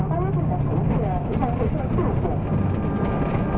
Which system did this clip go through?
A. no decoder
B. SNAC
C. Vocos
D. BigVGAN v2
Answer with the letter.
A